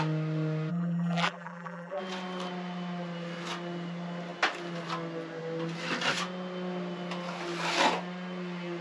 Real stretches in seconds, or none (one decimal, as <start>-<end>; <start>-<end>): 0.0-0.7; 2.0-8.8